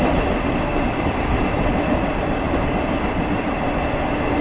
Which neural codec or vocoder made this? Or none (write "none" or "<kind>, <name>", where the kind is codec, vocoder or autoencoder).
none